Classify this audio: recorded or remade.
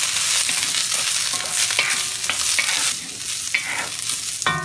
recorded